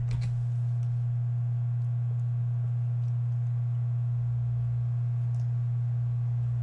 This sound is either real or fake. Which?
real